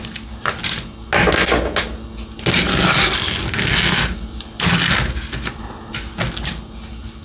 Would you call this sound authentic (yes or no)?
yes